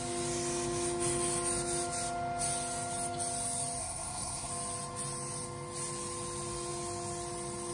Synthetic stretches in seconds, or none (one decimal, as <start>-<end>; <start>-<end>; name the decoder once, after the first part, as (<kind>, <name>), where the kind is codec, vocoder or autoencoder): 3.8-4.5 (codec, SNAC)